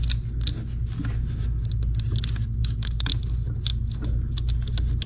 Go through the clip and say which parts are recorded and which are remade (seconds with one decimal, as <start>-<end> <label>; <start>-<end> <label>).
0.0-2.6 recorded; 2.6-3.1 remade; 3.1-5.1 recorded